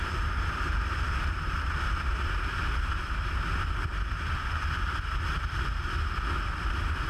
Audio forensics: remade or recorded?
recorded